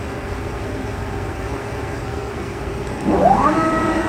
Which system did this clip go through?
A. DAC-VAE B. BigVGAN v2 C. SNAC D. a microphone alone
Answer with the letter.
C